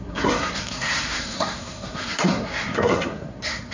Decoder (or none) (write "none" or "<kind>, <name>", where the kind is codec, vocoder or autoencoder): codec, SNAC